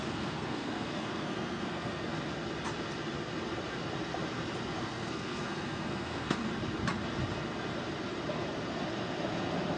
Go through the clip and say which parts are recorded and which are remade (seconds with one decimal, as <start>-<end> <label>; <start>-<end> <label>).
0.0-2.1 remade; 2.1-4.8 recorded; 4.8-6.4 remade; 6.4-9.8 recorded